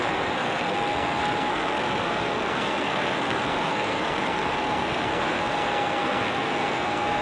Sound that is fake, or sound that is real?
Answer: fake